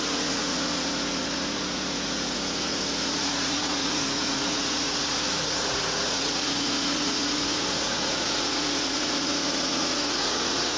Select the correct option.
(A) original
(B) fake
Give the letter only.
B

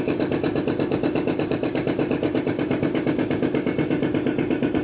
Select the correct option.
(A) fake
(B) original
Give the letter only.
A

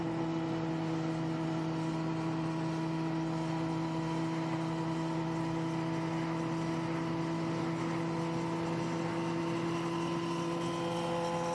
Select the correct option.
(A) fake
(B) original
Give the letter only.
B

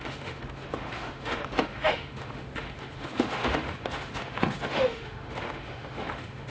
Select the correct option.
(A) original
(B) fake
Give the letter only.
B